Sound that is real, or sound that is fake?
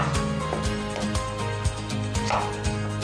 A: real